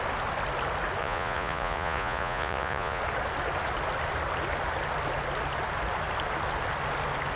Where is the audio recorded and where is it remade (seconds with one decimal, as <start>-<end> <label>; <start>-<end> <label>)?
0.0-1.0 recorded; 1.0-3.0 remade; 3.0-7.4 recorded